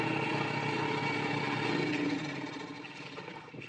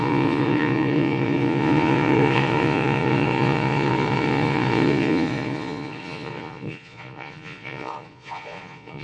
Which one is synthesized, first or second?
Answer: second